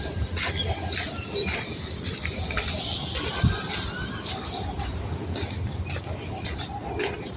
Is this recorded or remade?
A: recorded